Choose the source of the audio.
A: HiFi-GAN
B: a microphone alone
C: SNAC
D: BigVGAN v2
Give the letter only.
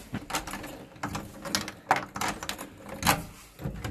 B